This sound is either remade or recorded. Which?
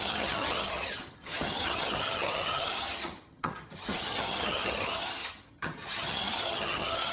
remade